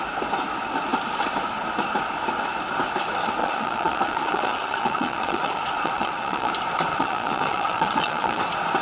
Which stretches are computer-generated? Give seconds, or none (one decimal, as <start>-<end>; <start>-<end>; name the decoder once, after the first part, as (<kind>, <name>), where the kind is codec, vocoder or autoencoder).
3.4-6.5 (vocoder, Vocos); 6.9-8.4